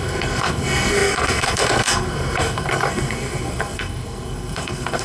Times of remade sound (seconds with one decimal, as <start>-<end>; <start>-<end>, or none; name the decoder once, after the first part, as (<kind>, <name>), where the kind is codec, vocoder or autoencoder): 0.0-5.0 (codec, SNAC)